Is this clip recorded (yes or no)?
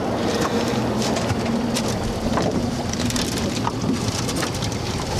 no